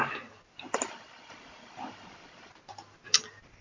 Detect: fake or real real